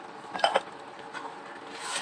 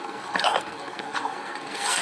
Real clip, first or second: first